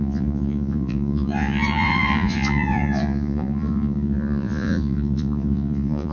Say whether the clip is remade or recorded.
remade